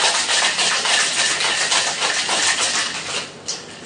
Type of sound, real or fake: real